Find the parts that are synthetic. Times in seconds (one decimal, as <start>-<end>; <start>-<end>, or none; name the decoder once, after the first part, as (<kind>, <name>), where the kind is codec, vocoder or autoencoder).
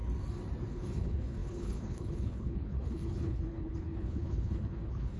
0.7-5.2 (codec, HILCodec)